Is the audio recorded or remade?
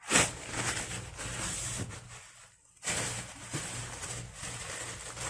recorded